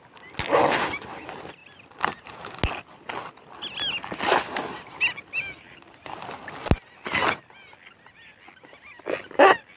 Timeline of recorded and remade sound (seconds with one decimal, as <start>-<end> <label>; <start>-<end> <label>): 0.0-9.8 recorded